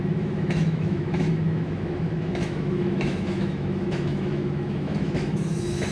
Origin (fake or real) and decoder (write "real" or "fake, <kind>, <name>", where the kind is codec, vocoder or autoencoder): fake, autoencoder, DAC-VAE